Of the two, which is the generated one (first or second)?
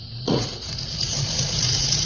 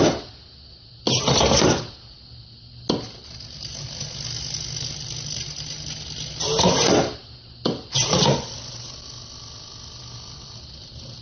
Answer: first